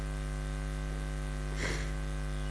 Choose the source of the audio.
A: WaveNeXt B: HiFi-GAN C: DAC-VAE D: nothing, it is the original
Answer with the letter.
D